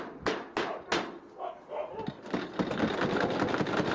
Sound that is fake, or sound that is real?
real